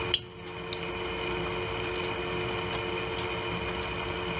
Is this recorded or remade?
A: recorded